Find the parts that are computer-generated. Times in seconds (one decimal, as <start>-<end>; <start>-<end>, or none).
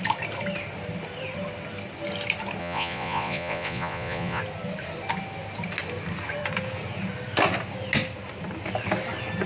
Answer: 2.6-4.4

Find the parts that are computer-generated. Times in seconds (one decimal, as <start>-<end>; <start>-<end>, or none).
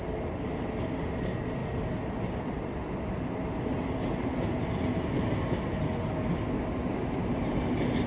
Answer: none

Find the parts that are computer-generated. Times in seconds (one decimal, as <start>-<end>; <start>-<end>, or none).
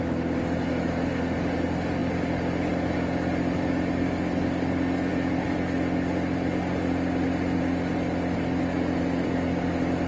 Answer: none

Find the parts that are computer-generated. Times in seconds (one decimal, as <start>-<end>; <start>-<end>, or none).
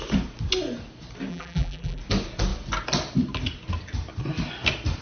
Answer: 1.3-2.0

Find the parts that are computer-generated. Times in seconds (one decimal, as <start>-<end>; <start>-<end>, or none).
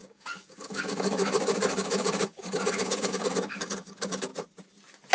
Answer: 0.0-4.3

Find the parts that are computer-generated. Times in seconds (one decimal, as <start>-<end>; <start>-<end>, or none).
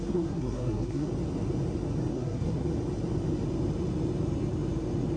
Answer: 0.0-1.1; 2.1-2.7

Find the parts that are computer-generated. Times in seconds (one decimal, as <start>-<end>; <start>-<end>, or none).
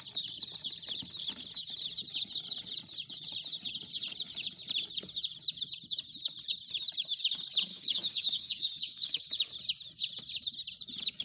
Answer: 7.7-9.2